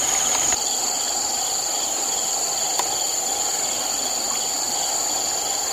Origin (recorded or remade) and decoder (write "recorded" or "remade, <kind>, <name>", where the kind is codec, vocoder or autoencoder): recorded